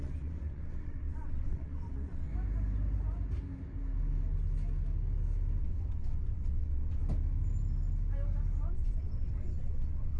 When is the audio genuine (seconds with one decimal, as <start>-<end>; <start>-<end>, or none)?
2.3-5.6; 7.0-8.7